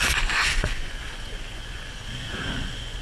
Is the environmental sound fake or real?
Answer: fake